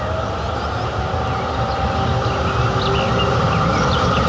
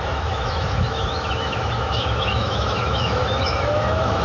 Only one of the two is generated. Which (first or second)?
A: second